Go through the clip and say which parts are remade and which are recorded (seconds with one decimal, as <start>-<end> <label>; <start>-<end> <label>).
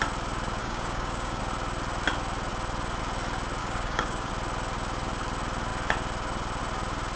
0.0-0.6 recorded; 0.6-1.4 remade; 1.4-3.6 recorded; 3.6-4.3 remade; 4.3-7.2 recorded